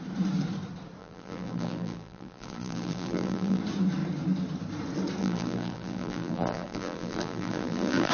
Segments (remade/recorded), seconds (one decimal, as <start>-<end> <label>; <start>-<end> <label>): 0.0-1.0 recorded; 1.0-3.6 remade; 3.6-5.2 recorded; 5.2-8.1 remade